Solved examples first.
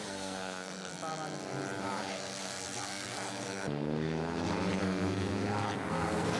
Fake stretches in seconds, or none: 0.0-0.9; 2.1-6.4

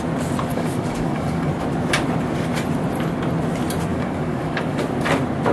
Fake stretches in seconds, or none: 0.5-1.5; 3.9-4.8